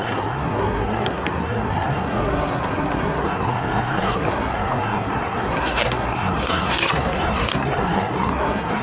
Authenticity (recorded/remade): remade